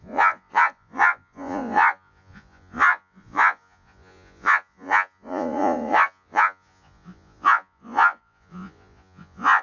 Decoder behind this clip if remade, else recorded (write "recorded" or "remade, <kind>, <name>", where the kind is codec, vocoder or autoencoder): remade, vocoder, Vocos